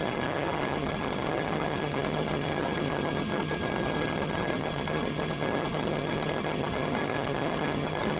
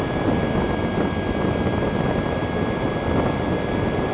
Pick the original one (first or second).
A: second